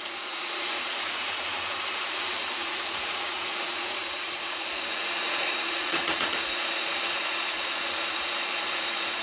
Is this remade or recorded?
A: remade